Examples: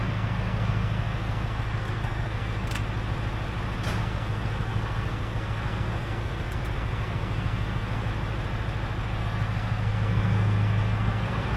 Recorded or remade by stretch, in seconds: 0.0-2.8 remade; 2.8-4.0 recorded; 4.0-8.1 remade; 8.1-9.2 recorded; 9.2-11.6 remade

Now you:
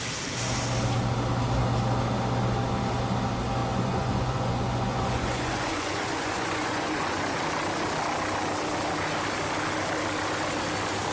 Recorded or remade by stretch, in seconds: 0.0-3.6 recorded; 3.6-7.4 remade; 7.4-11.1 recorded

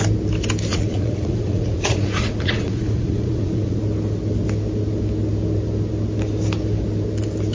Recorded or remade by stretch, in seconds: 0.0-0.7 recorded; 0.7-3.8 remade; 3.8-7.5 recorded

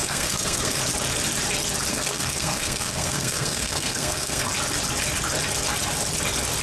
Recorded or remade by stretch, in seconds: 0.0-0.8 remade; 0.8-1.9 recorded; 1.9-4.5 remade; 4.5-6.6 recorded